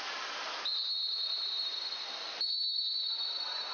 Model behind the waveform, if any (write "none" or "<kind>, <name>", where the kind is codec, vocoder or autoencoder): none